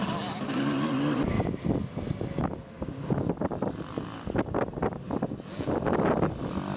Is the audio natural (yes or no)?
yes